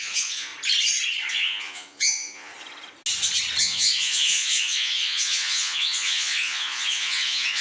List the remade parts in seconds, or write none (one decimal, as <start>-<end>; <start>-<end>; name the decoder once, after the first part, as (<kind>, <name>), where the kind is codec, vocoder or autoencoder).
0.0-0.5 (vocoder, Vocos); 1.3-2.5; 3.6-7.6